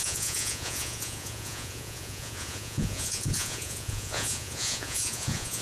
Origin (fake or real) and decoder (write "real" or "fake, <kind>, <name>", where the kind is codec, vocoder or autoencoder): fake, vocoder, Vocos